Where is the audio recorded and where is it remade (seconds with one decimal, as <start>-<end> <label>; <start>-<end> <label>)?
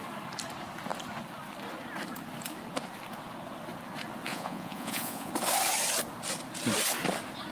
0.0-4.3 recorded; 4.3-5.3 remade; 5.3-7.5 recorded